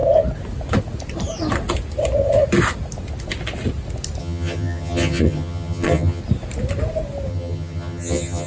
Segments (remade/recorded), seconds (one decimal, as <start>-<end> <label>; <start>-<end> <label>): 0.0-4.2 recorded; 4.2-6.2 remade; 6.2-7.3 recorded; 7.3-8.5 remade